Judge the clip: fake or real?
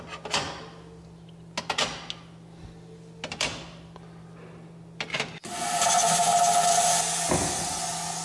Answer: real